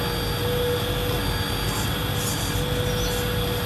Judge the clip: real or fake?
real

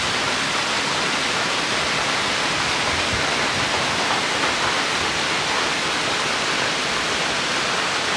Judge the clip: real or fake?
real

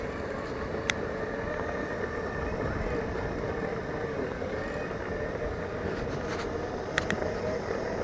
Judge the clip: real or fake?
real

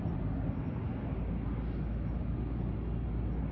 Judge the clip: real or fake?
real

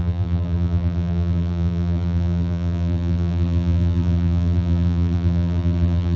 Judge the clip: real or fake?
fake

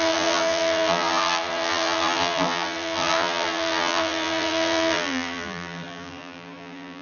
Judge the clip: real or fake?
fake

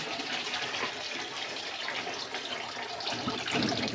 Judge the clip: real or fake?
real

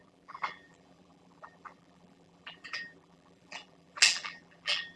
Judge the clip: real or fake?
fake